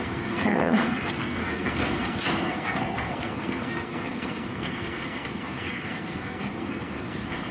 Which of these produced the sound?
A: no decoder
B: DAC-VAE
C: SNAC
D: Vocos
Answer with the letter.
C